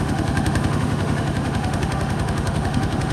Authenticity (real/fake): fake